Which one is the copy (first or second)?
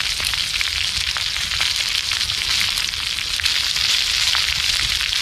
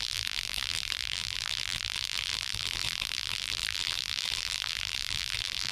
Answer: second